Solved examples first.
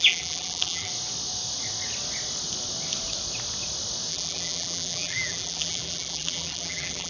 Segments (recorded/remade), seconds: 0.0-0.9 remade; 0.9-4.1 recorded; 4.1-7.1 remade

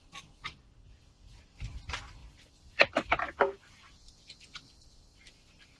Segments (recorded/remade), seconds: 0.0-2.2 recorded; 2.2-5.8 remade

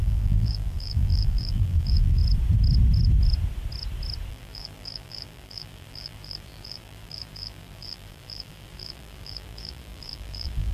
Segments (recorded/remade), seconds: 0.0-2.2 remade; 2.2-4.3 recorded; 4.3-10.7 remade

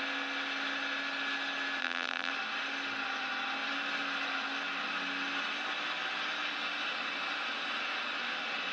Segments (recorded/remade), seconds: 0.0-1.8 recorded; 1.8-2.3 remade; 2.3-8.7 recorded